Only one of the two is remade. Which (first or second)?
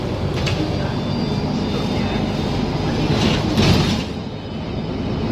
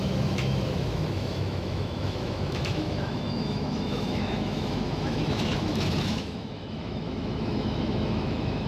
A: second